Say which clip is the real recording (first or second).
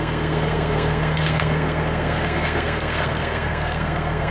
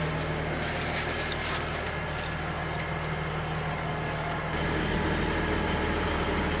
second